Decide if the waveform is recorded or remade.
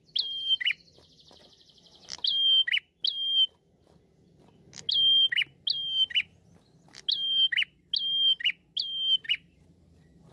recorded